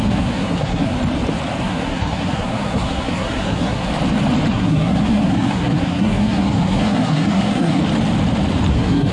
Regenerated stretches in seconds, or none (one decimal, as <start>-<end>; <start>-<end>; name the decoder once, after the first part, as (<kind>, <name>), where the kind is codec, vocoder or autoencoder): 0.0-0.9 (codec, SNAC); 1.6-3.9; 4.5-7.8; 8.7-9.1